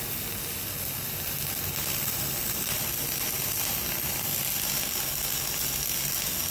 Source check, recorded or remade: recorded